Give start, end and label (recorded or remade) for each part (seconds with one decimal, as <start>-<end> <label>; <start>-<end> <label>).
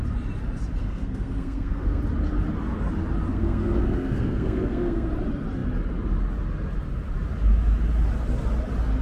0.0-0.8 recorded; 0.8-2.0 remade; 2.0-3.3 recorded; 3.3-5.1 remade; 5.1-9.0 recorded